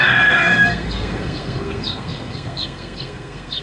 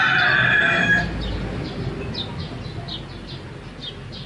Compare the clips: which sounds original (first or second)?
second